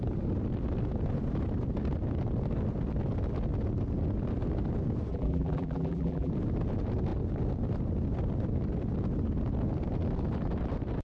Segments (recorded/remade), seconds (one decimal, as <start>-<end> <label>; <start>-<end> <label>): 0.0-5.1 recorded; 5.1-6.3 remade; 6.3-11.0 recorded